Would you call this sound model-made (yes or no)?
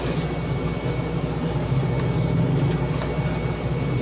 no